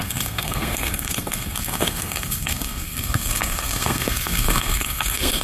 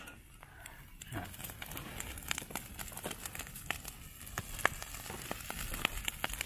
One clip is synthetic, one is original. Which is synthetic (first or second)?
first